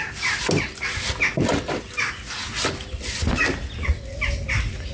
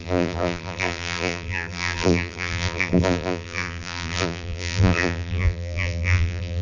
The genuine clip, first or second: first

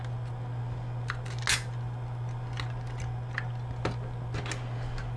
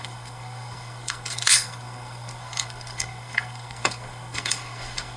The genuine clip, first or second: first